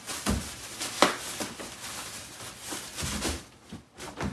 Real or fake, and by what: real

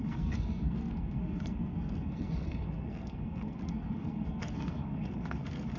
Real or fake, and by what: fake, codec, SNAC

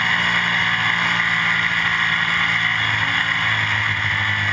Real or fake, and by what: real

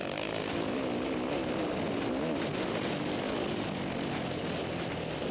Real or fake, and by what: real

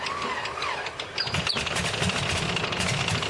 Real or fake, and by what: real